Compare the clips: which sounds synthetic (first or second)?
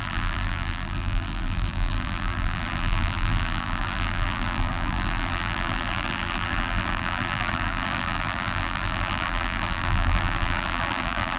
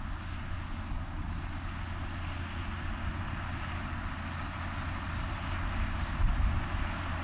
first